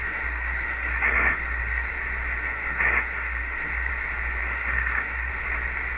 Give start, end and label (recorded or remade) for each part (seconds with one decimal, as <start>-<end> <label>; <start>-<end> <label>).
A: 0.0-1.9 remade; 1.9-2.4 recorded; 2.4-3.9 remade; 3.9-4.4 recorded; 4.4-5.3 remade; 5.3-6.0 recorded